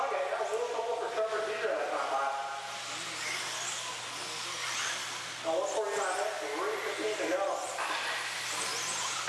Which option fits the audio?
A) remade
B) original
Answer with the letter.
B